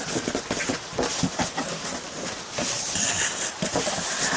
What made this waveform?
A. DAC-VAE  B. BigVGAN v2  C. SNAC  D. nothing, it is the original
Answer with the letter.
D